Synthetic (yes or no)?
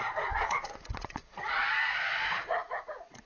yes